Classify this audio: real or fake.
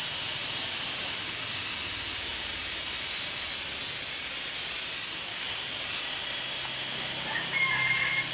real